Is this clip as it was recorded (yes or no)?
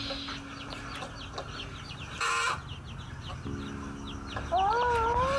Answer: yes